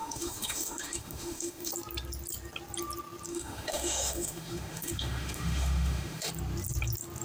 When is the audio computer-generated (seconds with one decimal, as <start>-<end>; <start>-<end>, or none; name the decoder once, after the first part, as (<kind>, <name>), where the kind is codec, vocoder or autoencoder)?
0.0-1.7 (autoencoder, DAC-VAE); 3.3-6.3